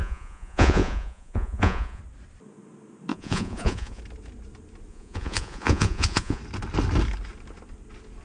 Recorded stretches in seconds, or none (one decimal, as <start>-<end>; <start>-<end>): 2.0-3.1; 4.0-4.9; 6.4-8.2